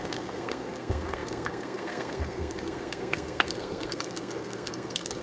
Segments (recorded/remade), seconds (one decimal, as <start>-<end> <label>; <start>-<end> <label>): 0.0-5.2 remade